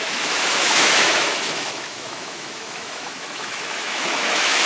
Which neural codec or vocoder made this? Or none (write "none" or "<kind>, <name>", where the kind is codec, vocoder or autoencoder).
autoencoder, DAC-VAE